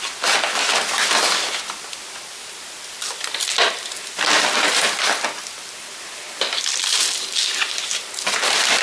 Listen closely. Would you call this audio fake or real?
real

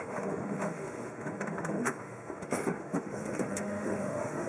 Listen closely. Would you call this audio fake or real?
fake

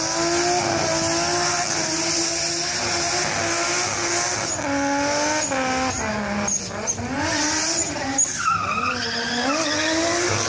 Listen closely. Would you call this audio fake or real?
real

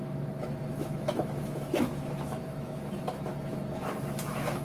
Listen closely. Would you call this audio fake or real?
fake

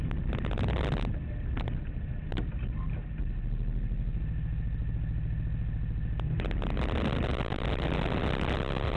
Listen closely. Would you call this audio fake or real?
real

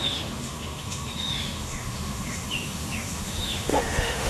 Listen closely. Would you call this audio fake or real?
fake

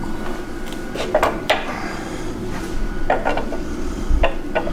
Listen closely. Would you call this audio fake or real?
real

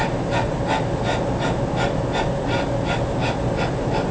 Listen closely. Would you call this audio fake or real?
real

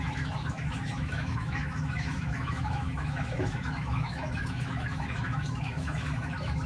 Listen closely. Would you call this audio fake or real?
fake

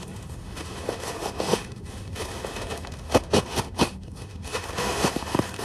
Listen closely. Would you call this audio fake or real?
fake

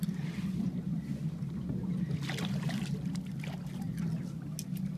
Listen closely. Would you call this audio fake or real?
real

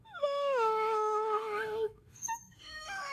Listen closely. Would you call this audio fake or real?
fake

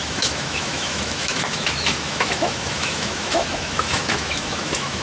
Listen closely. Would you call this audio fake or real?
fake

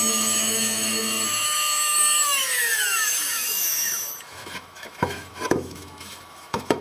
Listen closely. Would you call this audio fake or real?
fake